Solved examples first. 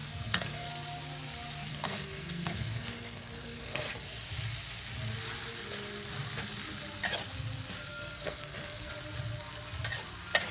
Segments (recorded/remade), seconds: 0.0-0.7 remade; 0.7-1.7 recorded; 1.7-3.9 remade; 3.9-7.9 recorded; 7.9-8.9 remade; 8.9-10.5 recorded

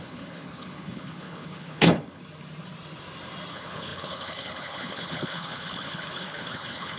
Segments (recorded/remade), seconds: 0.0-2.2 remade; 2.2-3.5 recorded; 3.5-7.0 remade

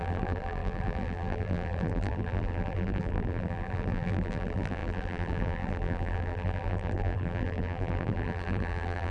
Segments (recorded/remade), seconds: 0.0-9.1 remade